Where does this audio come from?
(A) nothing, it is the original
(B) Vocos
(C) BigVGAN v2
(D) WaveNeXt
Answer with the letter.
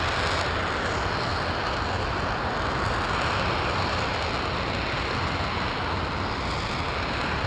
A